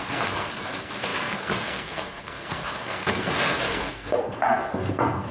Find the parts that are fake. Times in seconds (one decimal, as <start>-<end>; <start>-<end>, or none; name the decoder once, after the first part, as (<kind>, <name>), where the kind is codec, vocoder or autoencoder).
0.0-5.3 (codec, SNAC)